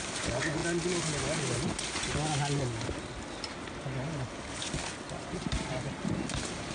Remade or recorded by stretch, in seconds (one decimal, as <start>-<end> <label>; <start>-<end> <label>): 0.0-6.7 recorded